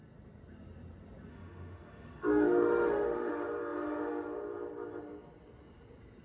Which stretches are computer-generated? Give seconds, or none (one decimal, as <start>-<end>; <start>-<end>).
1.3-3.3